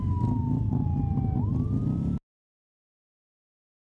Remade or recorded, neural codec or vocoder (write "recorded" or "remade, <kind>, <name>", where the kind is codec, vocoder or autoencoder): recorded